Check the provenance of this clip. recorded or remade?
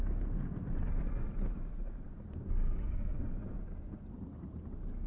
recorded